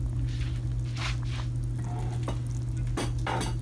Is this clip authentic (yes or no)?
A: yes